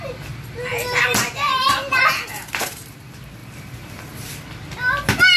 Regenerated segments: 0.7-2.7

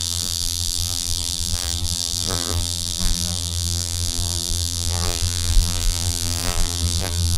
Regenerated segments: 0.0-7.4

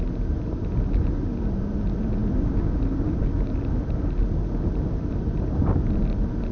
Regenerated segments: none